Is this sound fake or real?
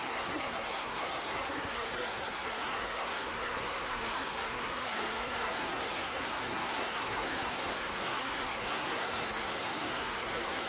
fake